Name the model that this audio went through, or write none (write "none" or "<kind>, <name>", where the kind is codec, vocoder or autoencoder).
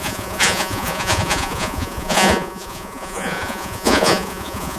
vocoder, Vocos